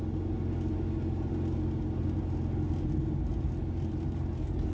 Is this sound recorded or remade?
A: recorded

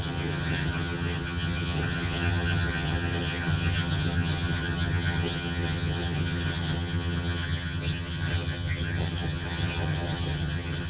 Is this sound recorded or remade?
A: remade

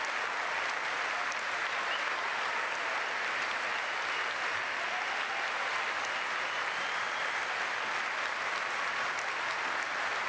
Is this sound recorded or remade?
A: recorded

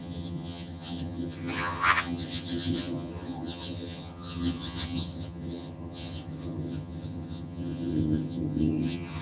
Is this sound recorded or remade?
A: remade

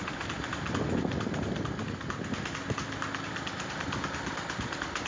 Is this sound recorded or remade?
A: recorded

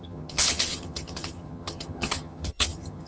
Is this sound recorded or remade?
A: remade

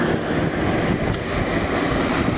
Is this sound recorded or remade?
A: recorded